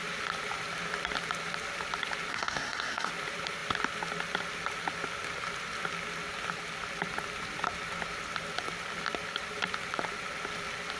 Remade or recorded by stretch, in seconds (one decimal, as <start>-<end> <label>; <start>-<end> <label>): 0.0-2.3 recorded; 2.3-3.1 remade; 3.1-11.0 recorded